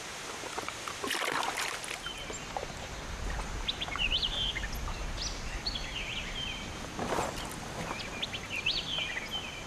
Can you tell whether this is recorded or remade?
recorded